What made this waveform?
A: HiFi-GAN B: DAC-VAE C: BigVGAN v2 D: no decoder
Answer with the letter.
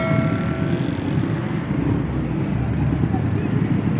D